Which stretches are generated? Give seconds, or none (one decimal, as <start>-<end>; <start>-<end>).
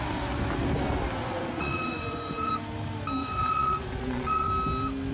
1.2-2.5; 3.2-4.5